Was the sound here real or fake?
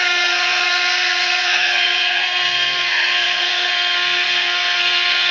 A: fake